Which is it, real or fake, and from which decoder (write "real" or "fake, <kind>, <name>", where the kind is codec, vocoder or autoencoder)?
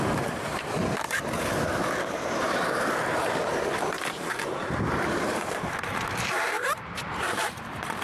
fake, vocoder, BigVGAN v2